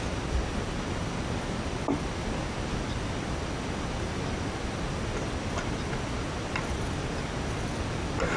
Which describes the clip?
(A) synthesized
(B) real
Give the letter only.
B